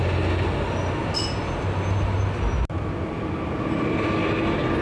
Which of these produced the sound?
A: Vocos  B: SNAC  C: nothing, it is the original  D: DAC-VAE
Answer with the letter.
C